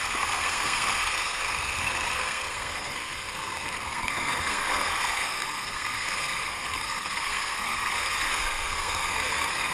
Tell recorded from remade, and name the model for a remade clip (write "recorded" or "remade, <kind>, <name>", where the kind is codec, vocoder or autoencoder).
remade, codec, SNAC